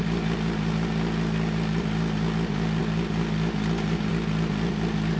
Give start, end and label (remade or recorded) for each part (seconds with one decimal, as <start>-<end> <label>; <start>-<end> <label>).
0.0-5.2 recorded